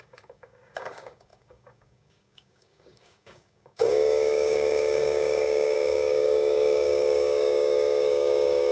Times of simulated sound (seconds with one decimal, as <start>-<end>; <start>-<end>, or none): 0.0-8.7